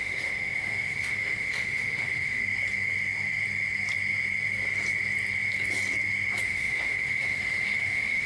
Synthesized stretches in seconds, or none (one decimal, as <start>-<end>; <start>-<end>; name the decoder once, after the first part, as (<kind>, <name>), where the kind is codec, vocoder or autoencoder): 0.0-2.4 (autoencoder, DAC-VAE); 6.4-8.3

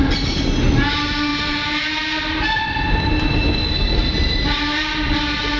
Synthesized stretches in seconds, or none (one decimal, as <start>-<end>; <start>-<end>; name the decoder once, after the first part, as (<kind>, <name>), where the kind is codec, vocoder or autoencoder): 1.3-2.8 (vocoder, BigVGAN v2)

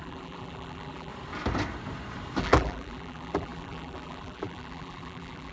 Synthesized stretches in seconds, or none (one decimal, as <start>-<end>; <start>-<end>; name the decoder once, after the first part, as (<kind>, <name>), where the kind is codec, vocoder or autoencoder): 0.0-1.1 (vocoder, BigVGAN v2); 2.4-5.5

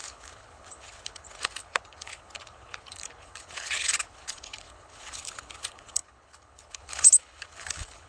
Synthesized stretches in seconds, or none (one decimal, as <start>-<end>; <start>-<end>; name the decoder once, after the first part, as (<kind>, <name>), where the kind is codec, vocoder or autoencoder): 0.0-8.1 (codec, HILCodec)